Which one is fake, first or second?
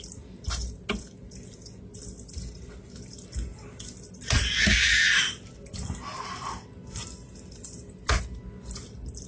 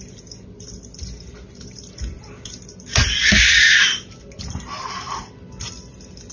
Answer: second